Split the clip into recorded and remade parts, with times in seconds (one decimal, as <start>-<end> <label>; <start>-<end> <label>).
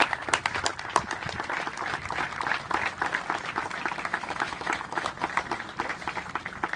0.0-4.1 recorded; 4.1-5.1 remade; 5.1-6.8 recorded